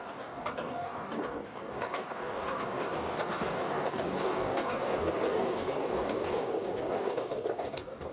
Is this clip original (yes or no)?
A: no